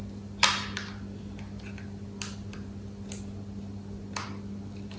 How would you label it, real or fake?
real